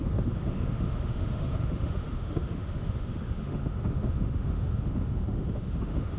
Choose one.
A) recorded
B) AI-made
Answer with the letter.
B